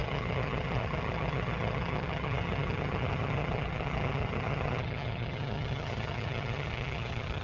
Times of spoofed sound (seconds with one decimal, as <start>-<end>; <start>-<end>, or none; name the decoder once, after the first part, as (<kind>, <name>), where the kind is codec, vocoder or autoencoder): 0.0-7.4 (vocoder, HiFi-GAN)

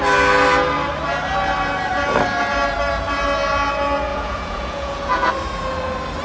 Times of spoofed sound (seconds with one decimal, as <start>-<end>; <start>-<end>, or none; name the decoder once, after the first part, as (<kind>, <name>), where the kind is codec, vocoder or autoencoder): 4.1-5.3 (vocoder, Vocos)

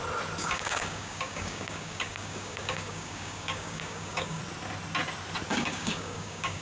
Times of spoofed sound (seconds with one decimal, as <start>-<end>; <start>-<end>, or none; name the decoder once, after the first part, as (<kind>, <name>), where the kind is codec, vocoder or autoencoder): 0.4-4.4 (codec, DAC); 5.5-6.6

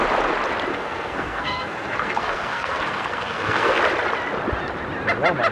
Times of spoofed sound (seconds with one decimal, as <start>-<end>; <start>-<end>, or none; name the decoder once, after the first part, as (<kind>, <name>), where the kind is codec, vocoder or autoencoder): 0.7-3.8 (codec, SNAC)

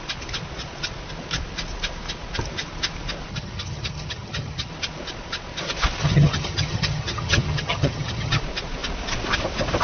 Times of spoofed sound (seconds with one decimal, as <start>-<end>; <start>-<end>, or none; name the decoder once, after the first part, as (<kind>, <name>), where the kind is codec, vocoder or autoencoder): 3.3-4.7 (vocoder, HiFi-GAN); 6.0-8.4

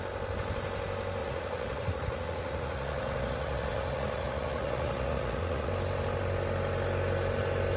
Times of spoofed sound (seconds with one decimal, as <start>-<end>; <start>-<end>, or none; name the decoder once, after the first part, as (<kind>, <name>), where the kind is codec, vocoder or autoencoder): 1.2-5.7 (vocoder, Vocos)

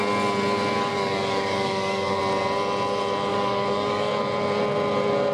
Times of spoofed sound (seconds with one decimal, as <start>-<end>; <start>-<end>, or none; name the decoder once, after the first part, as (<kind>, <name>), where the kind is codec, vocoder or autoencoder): 0.9-2.2 (codec, DAC); 3.3-4.1

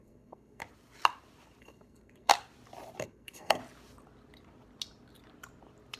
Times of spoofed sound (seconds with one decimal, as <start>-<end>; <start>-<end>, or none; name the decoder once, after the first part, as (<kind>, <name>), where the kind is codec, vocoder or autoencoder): 0.0-0.6 (codec, SNAC); 1.6-2.3; 3.0-3.6